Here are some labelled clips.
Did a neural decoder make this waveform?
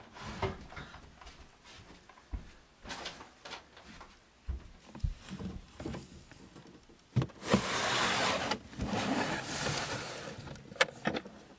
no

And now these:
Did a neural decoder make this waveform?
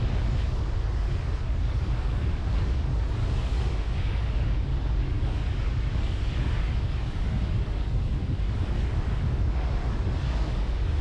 yes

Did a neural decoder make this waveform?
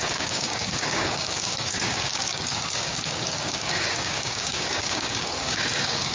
yes